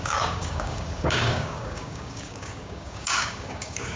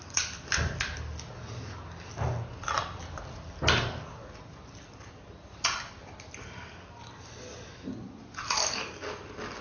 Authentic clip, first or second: second